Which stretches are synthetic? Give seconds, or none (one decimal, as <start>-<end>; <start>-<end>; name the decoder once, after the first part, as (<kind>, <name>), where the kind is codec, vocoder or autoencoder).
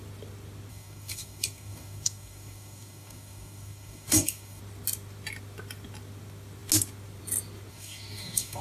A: 0.7-4.6 (codec, DAC); 7.7-8.6